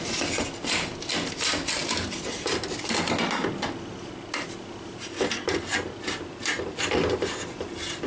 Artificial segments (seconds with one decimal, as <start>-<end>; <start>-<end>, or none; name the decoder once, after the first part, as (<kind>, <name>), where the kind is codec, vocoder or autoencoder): none

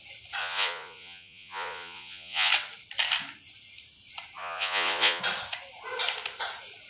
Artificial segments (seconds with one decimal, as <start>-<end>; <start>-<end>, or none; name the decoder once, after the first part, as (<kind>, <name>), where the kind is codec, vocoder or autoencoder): 0.4-2.5 (vocoder, Vocos); 4.4-5.2

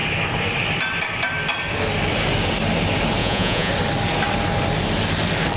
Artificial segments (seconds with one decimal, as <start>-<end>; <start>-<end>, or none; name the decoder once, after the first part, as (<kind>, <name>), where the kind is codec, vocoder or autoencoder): 3.2-3.7 (vocoder, Vocos)

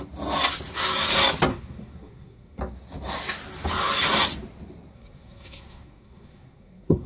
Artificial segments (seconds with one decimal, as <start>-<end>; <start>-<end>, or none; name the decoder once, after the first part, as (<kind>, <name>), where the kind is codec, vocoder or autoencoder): 1.5-2.6 (codec, SNAC); 4.9-7.1

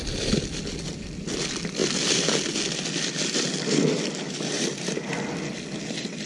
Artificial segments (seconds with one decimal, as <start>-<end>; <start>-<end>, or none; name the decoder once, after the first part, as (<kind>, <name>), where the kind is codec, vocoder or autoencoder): 1.8-5.6 (vocoder, BigVGAN v2)